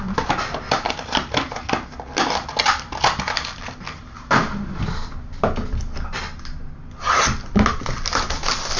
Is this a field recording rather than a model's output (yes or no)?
yes